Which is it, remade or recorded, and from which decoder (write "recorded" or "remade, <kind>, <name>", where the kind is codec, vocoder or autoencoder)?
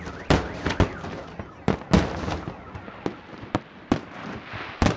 recorded